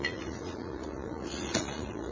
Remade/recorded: remade